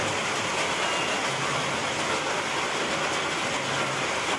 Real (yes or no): yes